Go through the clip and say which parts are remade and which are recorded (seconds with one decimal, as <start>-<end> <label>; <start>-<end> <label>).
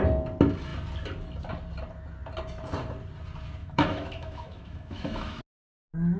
0.0-3.6 recorded; 3.6-5.4 remade; 5.4-6.2 recorded